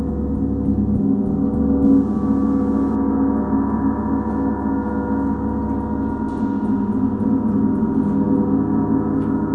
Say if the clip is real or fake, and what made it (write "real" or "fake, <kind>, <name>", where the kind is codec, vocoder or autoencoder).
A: real